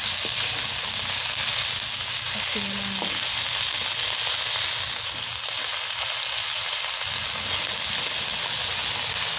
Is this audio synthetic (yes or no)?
no